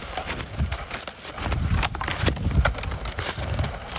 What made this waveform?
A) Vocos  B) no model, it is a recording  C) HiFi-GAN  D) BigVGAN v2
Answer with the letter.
B